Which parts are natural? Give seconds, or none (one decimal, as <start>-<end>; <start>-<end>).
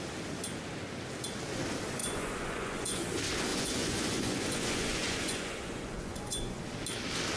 0.0-2.0; 3.1-3.5; 6.6-7.4